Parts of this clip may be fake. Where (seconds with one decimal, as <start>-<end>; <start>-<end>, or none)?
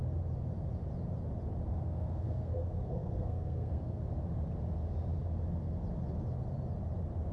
1.7-4.0